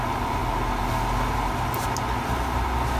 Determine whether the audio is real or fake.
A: real